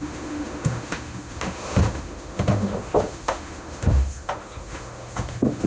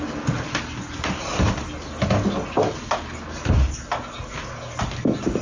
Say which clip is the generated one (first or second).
first